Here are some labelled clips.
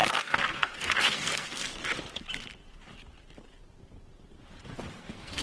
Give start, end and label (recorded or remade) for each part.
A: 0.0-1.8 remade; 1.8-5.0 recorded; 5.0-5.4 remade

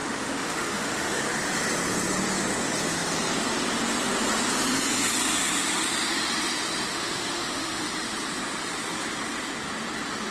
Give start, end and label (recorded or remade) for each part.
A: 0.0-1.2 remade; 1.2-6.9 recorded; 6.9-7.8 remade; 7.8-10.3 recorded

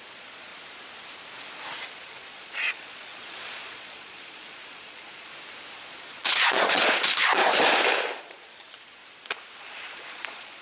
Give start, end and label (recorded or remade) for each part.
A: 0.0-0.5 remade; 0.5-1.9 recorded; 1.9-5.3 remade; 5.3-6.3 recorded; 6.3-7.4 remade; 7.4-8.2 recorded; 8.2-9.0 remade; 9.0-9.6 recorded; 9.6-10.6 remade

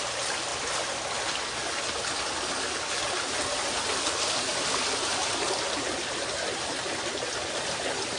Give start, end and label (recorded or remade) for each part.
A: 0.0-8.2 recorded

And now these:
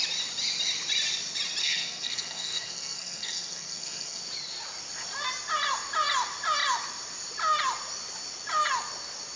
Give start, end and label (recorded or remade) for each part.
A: 0.0-1.6 recorded; 1.6-4.2 remade; 4.2-9.4 recorded